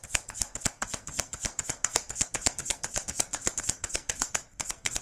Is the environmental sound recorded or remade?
remade